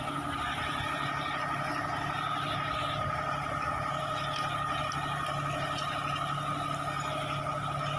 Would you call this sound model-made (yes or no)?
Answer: no